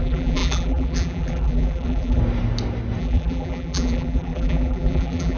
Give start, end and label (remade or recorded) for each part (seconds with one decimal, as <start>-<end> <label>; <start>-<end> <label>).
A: 0.0-2.2 remade; 2.2-3.0 recorded; 3.0-5.4 remade